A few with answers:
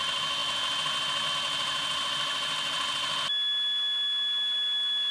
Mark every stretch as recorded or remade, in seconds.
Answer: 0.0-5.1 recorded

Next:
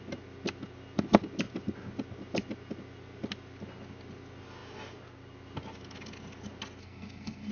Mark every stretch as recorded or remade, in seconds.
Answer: 0.0-6.8 recorded; 6.8-7.5 remade